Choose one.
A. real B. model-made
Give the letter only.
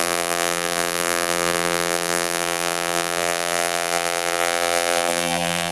B